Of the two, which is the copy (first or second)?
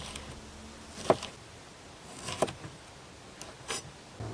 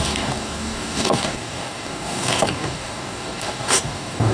second